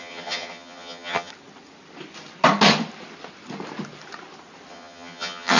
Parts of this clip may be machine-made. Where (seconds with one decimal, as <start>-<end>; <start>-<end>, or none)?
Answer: 0.0-1.3; 4.7-5.6